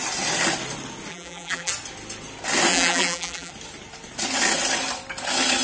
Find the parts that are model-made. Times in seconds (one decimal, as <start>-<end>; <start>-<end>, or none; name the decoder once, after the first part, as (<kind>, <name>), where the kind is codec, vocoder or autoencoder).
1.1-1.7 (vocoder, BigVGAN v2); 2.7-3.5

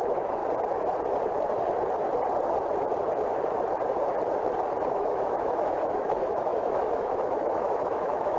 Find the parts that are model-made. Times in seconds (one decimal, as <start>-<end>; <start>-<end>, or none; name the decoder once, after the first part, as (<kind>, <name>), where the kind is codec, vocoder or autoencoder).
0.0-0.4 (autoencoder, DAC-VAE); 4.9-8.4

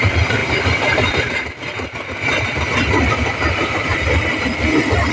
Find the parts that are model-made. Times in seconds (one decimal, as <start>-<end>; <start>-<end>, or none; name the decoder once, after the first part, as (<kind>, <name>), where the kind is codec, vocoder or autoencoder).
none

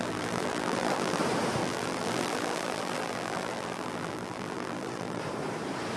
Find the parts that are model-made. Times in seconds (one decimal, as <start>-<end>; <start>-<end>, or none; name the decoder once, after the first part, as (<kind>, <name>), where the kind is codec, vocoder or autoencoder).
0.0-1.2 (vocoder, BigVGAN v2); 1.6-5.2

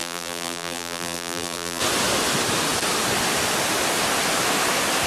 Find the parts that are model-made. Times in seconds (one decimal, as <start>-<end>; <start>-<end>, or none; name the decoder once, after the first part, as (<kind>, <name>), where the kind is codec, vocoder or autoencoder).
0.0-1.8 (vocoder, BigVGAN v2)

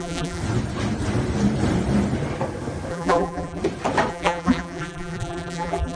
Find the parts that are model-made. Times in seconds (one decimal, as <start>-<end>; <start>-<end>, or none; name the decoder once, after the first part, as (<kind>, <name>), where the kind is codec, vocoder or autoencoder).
0.0-0.4 (vocoder, BigVGAN v2); 2.9-3.6; 4.1-5.9

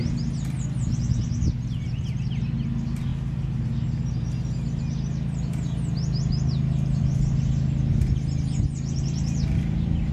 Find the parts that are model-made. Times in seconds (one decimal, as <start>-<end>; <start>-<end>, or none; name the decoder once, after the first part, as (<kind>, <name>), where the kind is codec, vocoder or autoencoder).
none

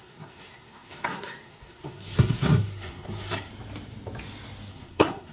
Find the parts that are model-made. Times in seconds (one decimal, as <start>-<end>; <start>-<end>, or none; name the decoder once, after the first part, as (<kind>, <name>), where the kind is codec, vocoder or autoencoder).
0.0-3.5 (codec, SNAC); 4.7-5.3